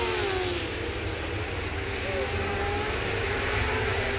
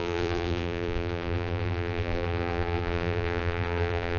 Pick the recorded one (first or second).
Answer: first